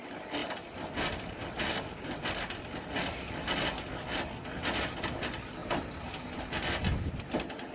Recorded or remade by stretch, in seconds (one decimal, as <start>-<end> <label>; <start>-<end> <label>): 0.0-0.4 recorded; 0.4-2.3 remade; 2.3-5.6 recorded; 5.6-6.4 remade; 6.4-7.7 recorded